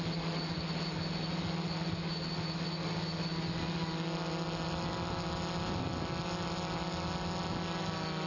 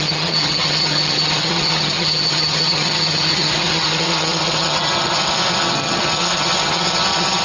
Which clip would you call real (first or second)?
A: first